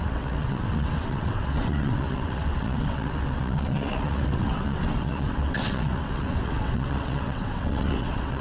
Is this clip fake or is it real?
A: fake